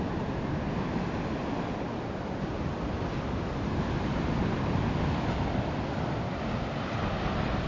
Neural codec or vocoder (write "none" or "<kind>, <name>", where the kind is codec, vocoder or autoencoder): none